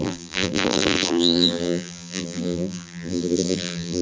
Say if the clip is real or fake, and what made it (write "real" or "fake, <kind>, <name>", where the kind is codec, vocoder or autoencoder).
fake, vocoder, BigVGAN v2